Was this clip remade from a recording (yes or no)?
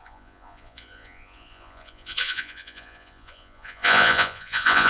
yes